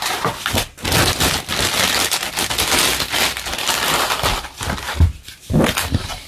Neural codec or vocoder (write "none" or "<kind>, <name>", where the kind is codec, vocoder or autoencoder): none